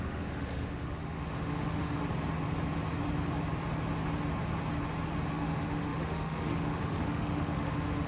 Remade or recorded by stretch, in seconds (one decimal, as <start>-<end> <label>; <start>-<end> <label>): 0.0-2.0 remade; 2.0-5.3 recorded; 5.3-8.1 remade